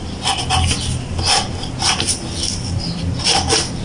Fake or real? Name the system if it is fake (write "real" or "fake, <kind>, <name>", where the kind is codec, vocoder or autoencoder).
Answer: real